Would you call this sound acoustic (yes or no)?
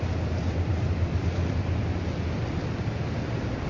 yes